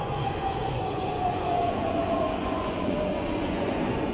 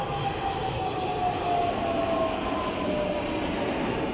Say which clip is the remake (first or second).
first